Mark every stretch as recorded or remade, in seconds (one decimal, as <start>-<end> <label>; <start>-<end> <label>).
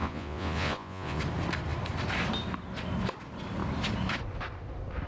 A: 0.0-1.2 remade; 1.2-5.1 recorded